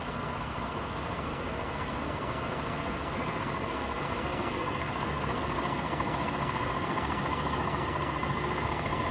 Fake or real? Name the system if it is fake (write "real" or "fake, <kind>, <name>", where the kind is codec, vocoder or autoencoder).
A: fake, codec, SNAC